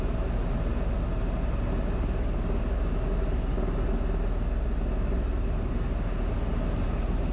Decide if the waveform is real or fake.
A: real